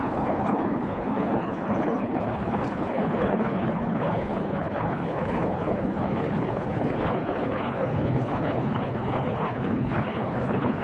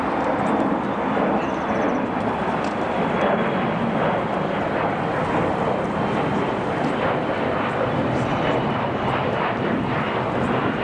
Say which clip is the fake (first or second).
first